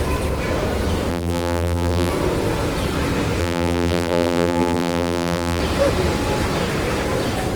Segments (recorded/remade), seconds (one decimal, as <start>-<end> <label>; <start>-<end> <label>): 0.0-1.1 recorded; 1.1-2.1 remade; 2.1-3.4 recorded; 3.4-5.6 remade; 5.6-7.6 recorded